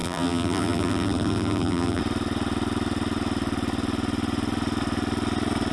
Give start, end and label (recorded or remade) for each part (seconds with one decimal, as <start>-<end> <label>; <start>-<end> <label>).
0.0-2.0 remade; 2.0-5.7 recorded